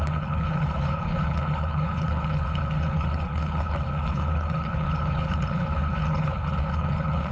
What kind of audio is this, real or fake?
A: fake